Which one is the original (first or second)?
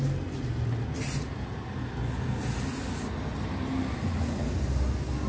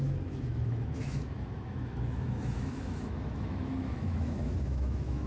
first